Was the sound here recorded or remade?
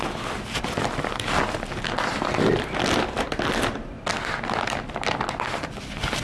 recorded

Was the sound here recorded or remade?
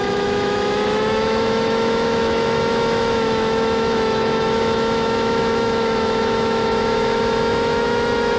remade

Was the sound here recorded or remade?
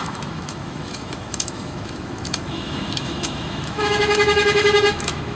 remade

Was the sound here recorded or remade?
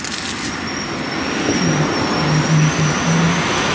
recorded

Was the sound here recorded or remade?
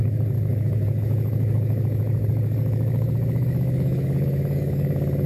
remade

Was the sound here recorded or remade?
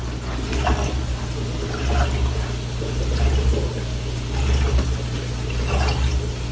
recorded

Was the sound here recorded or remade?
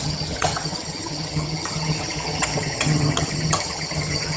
remade